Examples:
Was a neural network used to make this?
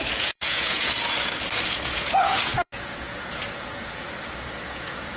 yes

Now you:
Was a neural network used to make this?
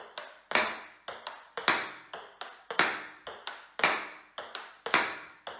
no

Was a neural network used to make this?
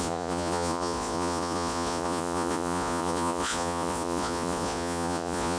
yes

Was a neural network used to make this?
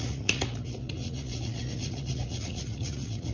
yes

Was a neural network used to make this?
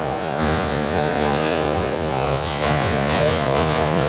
yes